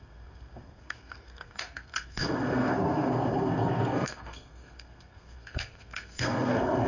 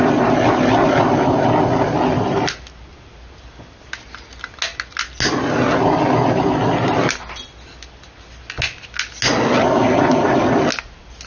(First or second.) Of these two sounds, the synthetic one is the first